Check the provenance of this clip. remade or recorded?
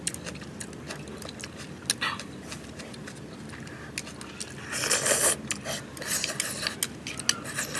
recorded